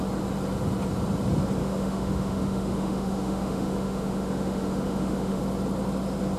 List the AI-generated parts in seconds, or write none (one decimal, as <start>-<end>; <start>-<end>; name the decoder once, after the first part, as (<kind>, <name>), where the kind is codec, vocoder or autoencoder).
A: 1.6-5.4 (autoencoder, DAC-VAE)